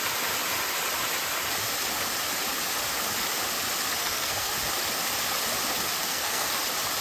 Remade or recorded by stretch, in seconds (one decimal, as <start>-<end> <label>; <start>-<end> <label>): 0.0-4.0 recorded; 4.0-4.5 remade; 4.5-6.0 recorded; 6.0-6.6 remade; 6.6-7.0 recorded